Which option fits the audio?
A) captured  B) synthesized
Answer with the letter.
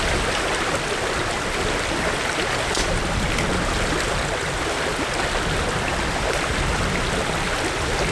A